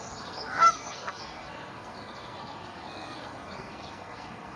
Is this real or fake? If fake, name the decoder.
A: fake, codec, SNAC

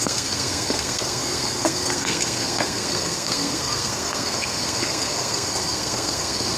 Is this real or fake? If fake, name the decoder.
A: fake, codec, SNAC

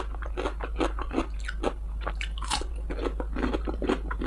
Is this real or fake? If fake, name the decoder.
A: real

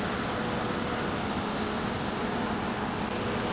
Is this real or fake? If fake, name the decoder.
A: real